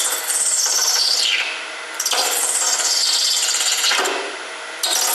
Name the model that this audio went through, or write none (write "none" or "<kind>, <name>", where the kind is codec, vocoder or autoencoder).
vocoder, BigVGAN v2